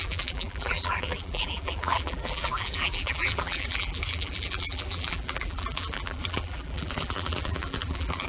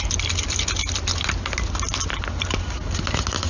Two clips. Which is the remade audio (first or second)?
first